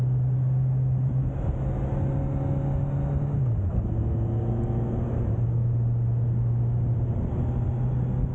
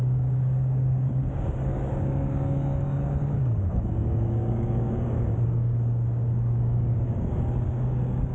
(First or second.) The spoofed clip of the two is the second